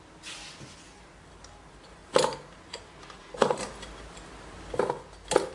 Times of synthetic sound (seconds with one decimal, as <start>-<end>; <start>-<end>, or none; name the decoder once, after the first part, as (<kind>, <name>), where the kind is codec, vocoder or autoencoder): none